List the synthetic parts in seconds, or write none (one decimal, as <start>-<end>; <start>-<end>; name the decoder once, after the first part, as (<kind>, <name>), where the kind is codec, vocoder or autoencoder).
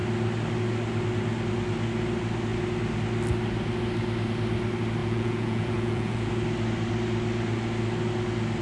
5.0-6.3 (vocoder, Vocos)